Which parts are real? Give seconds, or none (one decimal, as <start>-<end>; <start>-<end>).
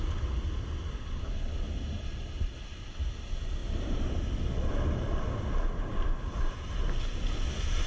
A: 0.0-7.9